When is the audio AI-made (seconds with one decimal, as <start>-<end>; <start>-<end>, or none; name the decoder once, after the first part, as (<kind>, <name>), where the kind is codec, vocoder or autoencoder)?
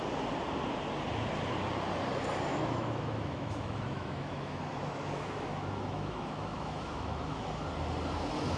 2.5-7.5 (autoencoder, DAC-VAE)